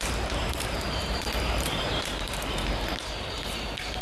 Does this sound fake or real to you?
fake